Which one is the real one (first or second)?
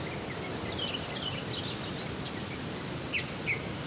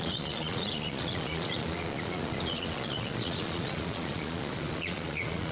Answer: first